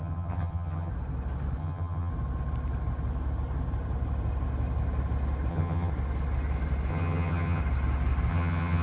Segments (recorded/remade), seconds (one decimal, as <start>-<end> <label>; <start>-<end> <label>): 0.0-0.9 remade; 0.9-1.6 recorded; 1.6-2.1 remade; 2.1-5.5 recorded; 5.5-5.9 remade; 5.9-6.9 recorded; 6.9-7.6 remade; 7.6-8.3 recorded; 8.3-8.8 remade